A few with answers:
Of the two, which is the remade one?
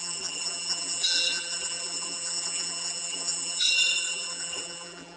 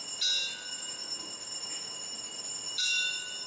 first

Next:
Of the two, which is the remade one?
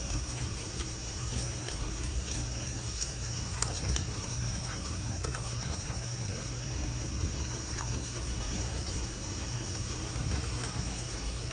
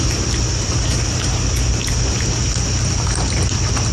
first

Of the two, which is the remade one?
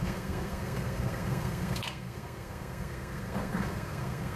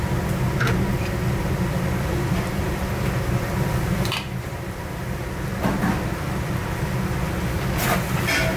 first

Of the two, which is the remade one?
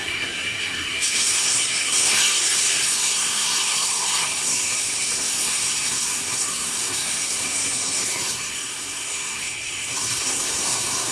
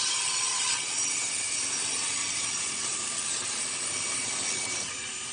first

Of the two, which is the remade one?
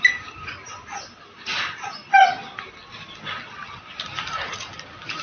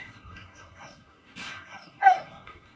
second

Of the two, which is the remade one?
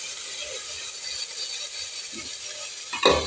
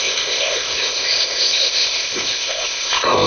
second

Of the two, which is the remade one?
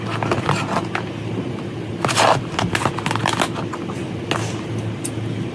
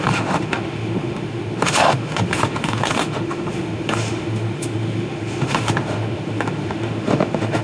second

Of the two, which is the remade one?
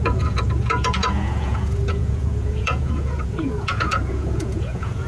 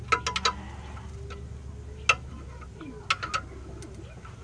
first